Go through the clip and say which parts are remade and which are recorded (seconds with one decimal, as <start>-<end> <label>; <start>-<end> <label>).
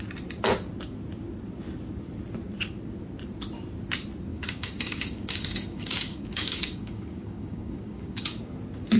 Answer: 0.0-4.3 recorded; 4.3-8.4 remade; 8.4-9.0 recorded